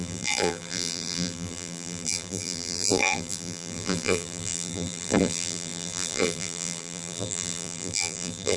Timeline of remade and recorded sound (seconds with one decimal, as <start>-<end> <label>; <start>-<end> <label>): 0.0-8.6 remade